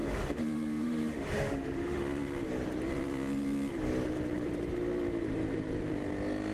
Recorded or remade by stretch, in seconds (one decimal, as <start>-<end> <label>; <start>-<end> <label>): 0.0-2.0 remade; 2.0-6.5 recorded